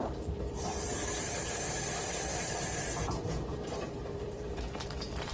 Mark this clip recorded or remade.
remade